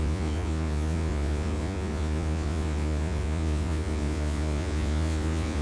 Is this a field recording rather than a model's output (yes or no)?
no